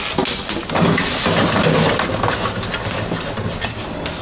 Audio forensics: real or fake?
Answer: real